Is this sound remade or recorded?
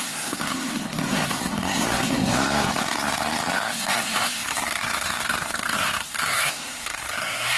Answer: remade